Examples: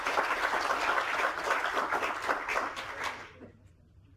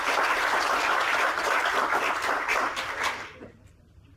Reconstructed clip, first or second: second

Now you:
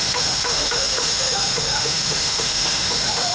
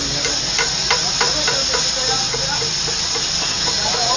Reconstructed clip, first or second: first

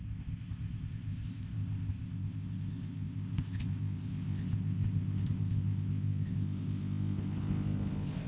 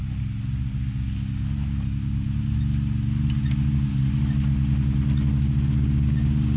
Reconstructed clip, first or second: first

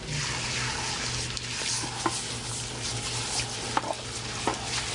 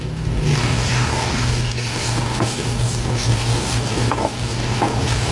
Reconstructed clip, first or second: second